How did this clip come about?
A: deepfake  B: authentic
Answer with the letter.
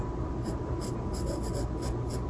B